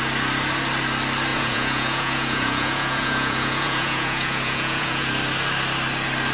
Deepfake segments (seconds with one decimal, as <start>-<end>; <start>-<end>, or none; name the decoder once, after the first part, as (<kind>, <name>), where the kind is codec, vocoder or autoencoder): 1.3-5.1 (vocoder, Vocos)